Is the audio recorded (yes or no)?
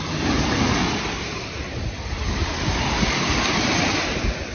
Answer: yes